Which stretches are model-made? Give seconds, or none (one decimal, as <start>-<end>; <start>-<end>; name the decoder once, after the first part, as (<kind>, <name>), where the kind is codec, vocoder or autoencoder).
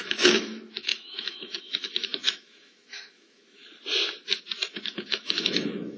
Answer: 0.0-3.6 (autoencoder, DAC-VAE); 4.7-6.0